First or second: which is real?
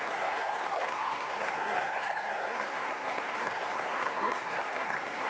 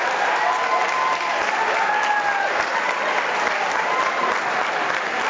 second